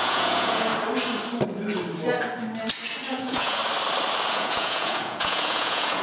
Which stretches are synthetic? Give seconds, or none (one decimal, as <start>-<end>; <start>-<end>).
0.0-0.7; 3.1-3.6; 4.3-6.0